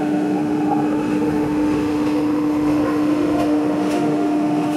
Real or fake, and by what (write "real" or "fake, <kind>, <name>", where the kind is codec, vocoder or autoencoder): fake, autoencoder, DAC-VAE